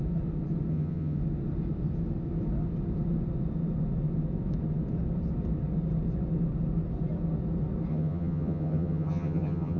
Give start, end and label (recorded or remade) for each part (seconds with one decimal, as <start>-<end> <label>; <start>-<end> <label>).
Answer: 0.0-0.7 recorded; 0.7-1.2 remade; 1.2-7.9 recorded; 7.9-9.8 remade